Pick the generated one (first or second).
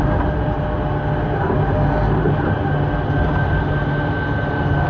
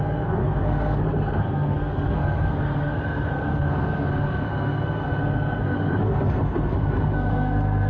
second